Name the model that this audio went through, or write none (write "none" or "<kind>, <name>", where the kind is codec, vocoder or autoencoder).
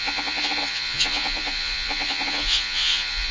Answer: vocoder, Vocos